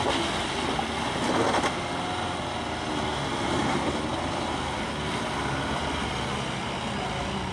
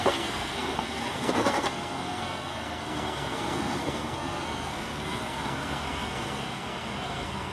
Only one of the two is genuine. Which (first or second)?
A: first